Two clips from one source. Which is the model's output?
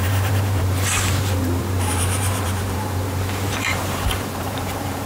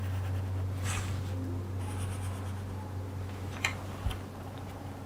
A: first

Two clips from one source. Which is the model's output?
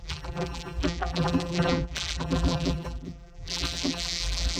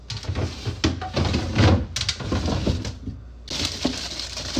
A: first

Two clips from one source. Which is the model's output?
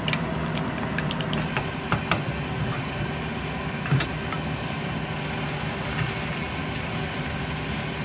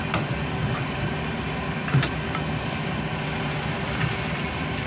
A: second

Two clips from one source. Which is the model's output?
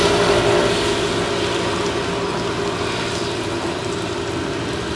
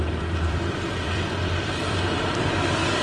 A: second